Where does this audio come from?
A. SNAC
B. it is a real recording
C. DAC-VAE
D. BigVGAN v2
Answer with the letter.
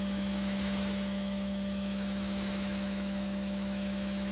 C